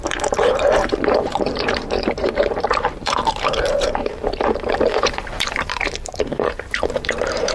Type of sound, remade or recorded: remade